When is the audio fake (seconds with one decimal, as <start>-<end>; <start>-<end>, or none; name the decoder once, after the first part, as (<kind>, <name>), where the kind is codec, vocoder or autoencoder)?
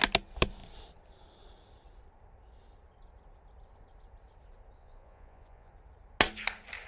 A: 4.8-5.7 (vocoder, Vocos)